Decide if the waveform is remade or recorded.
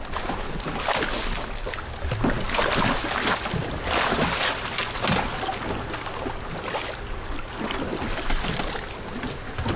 recorded